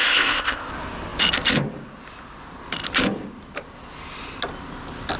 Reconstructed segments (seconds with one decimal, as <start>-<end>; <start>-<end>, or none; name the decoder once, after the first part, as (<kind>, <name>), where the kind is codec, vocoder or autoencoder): 0.0-0.7 (codec, ZipCodec)